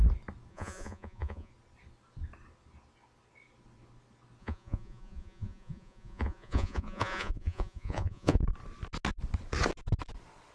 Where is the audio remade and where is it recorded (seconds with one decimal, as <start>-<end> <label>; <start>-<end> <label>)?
0.0-0.5 recorded; 0.5-1.5 remade; 1.5-4.4 recorded; 4.4-8.4 remade; 8.4-10.5 recorded